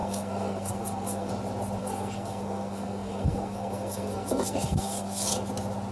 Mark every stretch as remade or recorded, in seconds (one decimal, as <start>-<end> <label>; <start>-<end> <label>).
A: 0.0-1.3 remade; 1.3-1.8 recorded; 1.8-5.3 remade; 5.3-5.9 recorded